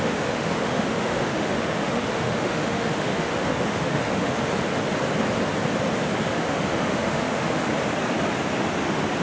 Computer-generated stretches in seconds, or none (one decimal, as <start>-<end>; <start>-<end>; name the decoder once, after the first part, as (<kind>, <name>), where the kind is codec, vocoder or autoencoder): 0.0-4.5 (autoencoder, DAC-VAE); 6.3-7.7